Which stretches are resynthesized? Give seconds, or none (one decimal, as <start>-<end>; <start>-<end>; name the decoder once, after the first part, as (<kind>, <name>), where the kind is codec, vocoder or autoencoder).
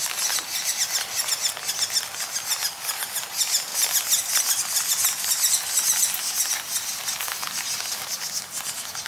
none